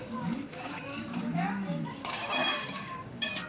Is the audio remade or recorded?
remade